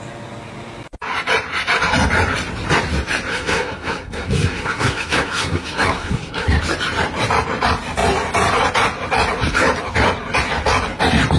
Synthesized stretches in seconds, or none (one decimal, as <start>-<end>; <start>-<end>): 3.3-6.6